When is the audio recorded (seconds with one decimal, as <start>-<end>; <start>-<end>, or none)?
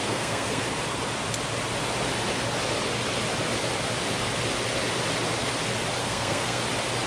0.6-6.0; 6.6-7.1